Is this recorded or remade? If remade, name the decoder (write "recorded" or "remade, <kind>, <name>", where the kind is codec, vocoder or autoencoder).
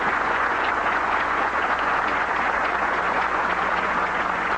remade, vocoder, Vocos